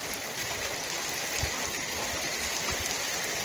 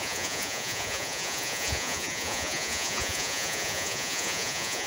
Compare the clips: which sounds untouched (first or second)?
first